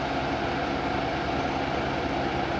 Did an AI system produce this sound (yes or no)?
no